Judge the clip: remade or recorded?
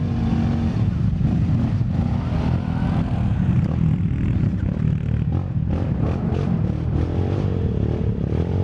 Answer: recorded